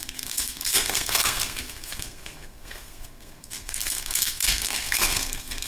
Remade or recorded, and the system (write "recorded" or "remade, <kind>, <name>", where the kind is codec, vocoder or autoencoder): remade, codec, SNAC